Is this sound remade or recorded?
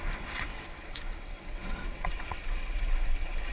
remade